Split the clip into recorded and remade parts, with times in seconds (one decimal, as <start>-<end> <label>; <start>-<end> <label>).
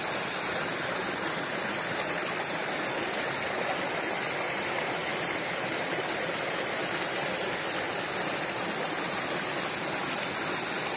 0.0-5.0 recorded; 5.0-6.2 remade; 6.2-11.0 recorded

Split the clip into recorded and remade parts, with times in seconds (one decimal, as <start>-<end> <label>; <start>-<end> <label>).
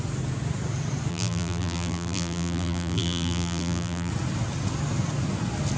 0.0-1.1 recorded; 1.1-4.1 remade; 4.1-5.8 recorded